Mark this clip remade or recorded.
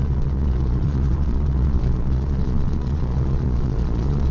remade